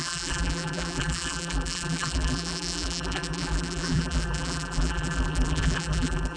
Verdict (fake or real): fake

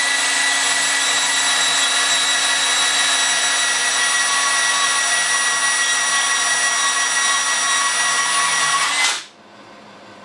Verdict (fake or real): real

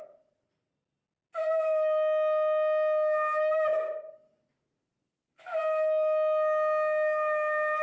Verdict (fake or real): real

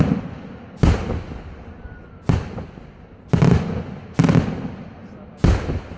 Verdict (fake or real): real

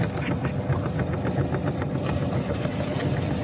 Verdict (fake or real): real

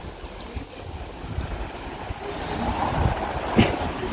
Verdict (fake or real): real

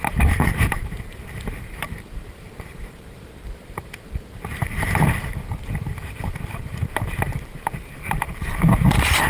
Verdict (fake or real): fake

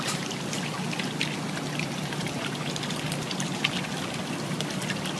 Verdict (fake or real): real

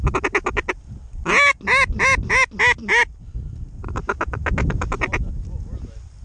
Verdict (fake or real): real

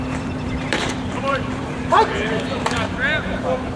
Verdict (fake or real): fake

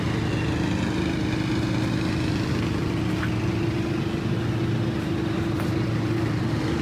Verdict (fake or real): real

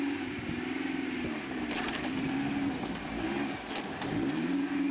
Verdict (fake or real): fake